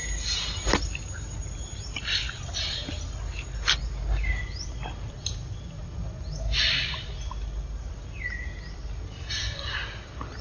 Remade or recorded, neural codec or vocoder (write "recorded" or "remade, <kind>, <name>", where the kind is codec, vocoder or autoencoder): recorded